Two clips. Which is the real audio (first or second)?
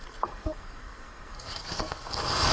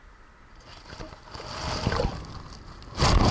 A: second